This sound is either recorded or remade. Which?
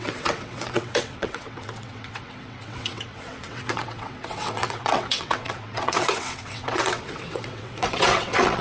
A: remade